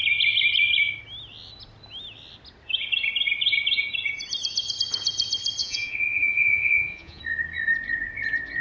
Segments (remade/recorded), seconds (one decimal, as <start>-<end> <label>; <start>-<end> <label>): 0.0-5.6 recorded; 5.6-7.2 remade; 7.2-8.6 recorded